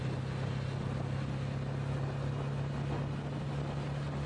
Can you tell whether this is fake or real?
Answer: real